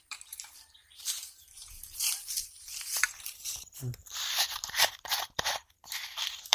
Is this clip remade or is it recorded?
remade